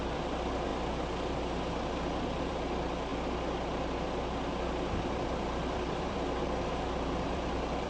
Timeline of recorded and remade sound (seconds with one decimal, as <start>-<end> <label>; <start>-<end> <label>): 0.0-0.7 remade; 0.7-2.4 recorded; 2.4-3.1 remade; 3.1-4.5 recorded; 4.5-7.9 remade